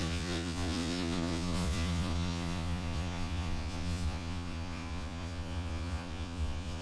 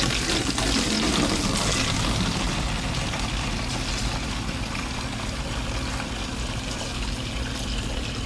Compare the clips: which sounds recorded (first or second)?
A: second